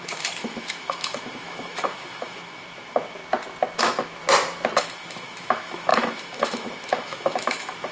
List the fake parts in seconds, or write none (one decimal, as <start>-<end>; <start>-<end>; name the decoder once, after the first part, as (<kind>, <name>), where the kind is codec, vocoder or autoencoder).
0.0-3.2 (autoencoder, DAC-VAE); 3.8-4.2; 4.8-7.9